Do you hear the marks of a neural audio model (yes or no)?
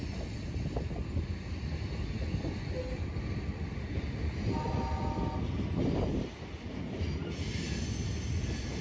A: no